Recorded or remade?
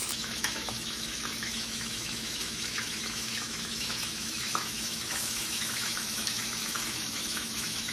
remade